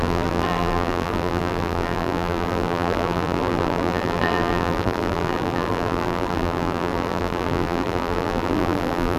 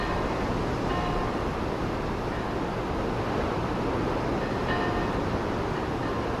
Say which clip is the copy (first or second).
first